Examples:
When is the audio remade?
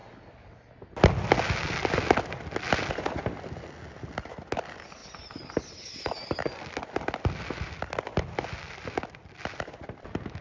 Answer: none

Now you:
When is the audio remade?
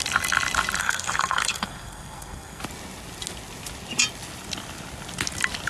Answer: 0.8-2.6 (codec, SNAC)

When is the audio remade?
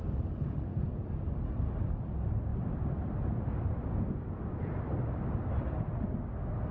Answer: none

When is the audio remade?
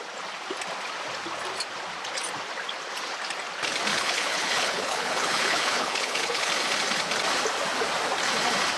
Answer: 3.9-6.5 (codec, HILCodec)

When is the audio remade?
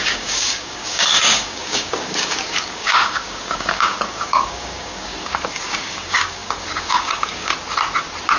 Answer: 0.0-7.5 (codec, DAC)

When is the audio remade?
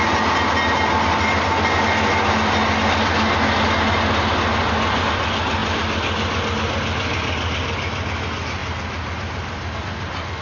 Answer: none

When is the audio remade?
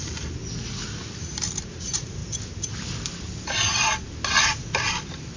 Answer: 0.0-0.4 (vocoder, BigVGAN v2); 1.2-2.2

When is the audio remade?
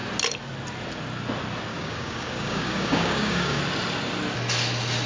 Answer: 1.7-3.6 (codec, DAC)